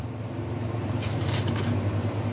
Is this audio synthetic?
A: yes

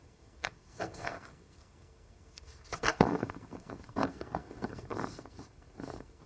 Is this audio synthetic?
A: yes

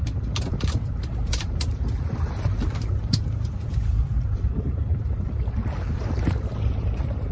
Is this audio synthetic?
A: yes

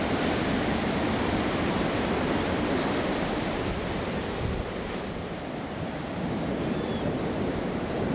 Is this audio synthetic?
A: yes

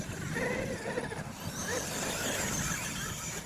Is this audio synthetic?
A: no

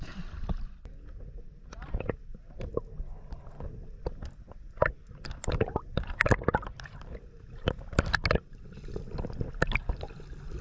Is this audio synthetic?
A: no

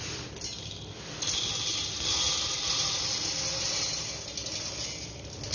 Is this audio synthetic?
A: no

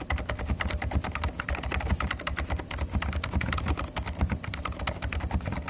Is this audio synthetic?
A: no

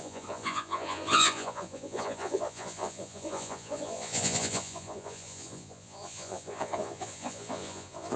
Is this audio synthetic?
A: yes